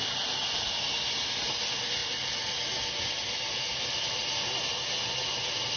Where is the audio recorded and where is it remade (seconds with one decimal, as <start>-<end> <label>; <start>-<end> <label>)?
0.0-5.8 recorded